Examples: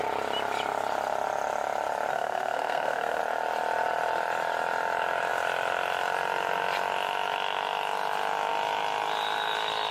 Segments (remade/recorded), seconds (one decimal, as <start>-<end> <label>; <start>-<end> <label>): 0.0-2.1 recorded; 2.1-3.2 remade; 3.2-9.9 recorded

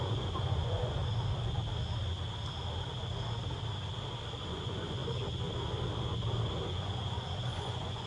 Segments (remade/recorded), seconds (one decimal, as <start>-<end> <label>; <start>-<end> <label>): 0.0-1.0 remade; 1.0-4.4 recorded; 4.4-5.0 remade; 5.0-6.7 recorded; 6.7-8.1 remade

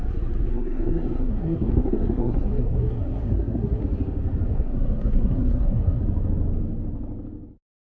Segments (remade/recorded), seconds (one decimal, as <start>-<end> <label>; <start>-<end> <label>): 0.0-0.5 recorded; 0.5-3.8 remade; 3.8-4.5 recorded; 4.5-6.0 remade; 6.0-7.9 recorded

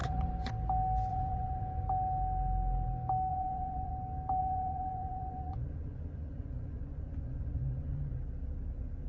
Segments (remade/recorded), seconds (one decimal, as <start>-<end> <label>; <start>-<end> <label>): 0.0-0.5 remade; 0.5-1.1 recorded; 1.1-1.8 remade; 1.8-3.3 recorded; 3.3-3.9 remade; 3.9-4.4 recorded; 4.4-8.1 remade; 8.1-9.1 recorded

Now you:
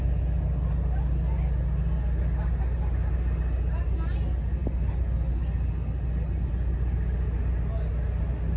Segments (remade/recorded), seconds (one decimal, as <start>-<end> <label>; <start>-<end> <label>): 0.0-8.6 recorded